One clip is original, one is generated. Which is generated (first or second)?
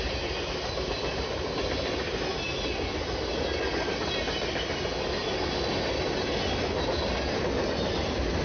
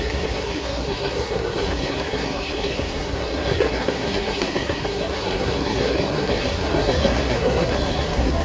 second